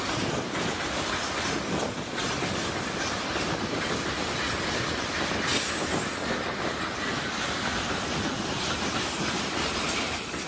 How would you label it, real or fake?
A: real